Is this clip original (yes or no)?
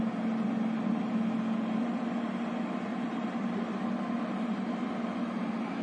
yes